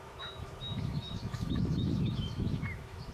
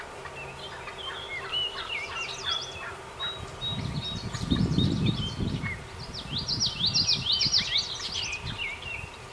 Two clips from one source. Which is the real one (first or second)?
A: second